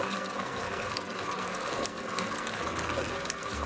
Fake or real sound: fake